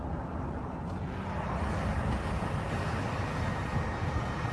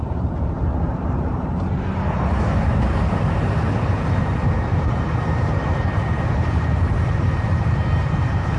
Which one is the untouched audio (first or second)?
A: first